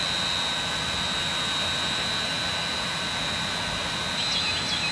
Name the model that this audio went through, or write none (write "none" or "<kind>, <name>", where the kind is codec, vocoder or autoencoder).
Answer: none